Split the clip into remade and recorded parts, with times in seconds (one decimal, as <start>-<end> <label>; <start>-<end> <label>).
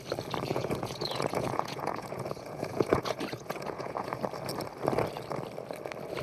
0.0-0.5 recorded; 0.5-4.2 remade; 4.2-6.2 recorded